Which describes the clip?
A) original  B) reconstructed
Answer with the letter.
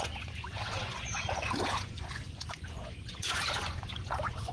B